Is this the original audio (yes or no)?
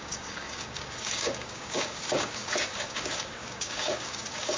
no